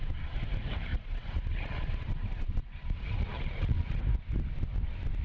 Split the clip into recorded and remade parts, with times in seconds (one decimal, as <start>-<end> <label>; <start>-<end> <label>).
0.0-0.9 recorded; 0.9-4.0 remade; 4.0-5.2 recorded